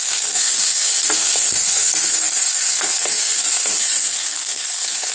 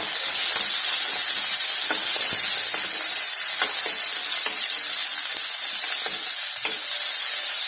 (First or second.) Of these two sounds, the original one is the second